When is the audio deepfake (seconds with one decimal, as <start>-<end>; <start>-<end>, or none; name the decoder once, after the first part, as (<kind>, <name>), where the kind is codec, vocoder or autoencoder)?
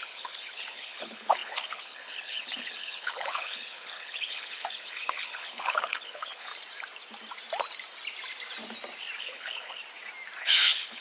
0.0-6.5 (codec, HILCodec); 9.2-9.8; 10.4-11.0